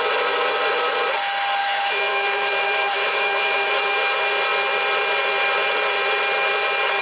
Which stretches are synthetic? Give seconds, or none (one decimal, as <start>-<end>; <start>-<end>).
1.6-4.1